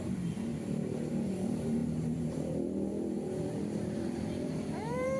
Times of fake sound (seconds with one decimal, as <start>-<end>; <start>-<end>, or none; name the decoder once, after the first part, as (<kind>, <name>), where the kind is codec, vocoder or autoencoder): 0.0-0.5 (vocoder, BigVGAN v2); 1.1-5.2